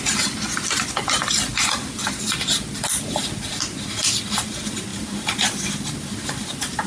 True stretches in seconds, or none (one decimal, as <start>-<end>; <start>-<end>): 0.0-4.9